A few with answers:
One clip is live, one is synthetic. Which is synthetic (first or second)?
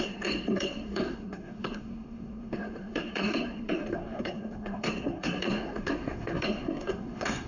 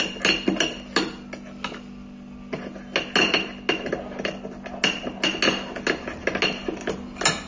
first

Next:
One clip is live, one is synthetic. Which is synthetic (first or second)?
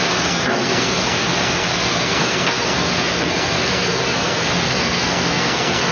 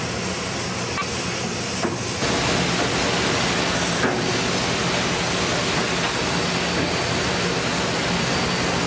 first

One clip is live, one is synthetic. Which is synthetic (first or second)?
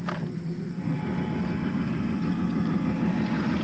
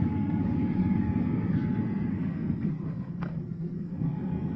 second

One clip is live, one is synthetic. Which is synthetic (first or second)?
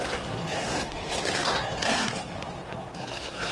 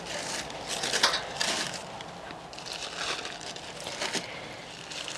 first